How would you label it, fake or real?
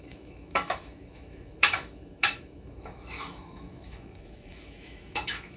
fake